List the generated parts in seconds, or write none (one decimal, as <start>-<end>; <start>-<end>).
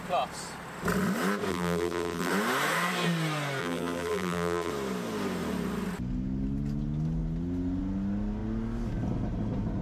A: 1.5-2.3; 3.6-4.7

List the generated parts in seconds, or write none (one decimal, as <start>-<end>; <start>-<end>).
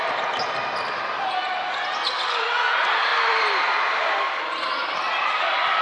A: 3.1-3.6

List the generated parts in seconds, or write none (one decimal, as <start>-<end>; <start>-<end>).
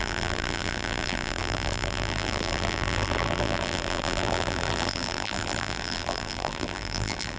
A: 0.0-7.4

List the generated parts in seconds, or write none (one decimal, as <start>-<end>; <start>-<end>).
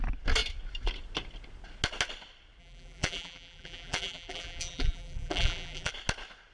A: 2.6-5.9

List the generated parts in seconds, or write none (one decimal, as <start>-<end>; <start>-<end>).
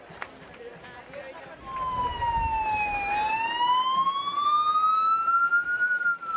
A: none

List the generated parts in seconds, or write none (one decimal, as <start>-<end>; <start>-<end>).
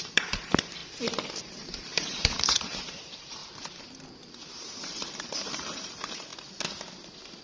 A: 0.0-0.8; 1.4-3.4; 4.5-6.3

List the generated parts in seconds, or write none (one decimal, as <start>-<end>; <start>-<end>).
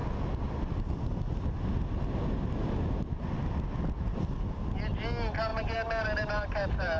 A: 5.5-7.0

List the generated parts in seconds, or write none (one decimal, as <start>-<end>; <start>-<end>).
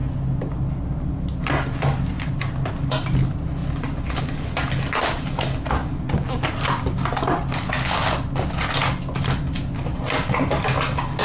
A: none